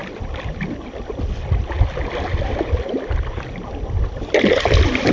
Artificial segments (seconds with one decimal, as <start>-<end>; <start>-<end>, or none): none